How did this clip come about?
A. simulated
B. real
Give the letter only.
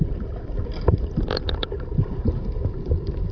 B